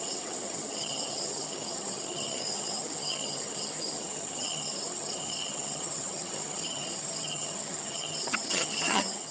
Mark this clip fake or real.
fake